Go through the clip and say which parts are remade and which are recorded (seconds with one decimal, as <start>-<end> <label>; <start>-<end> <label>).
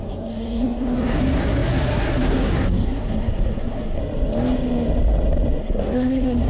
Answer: 0.0-4.0 remade; 4.0-5.6 recorded; 5.6-6.5 remade